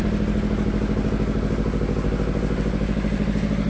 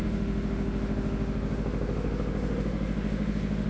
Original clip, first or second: first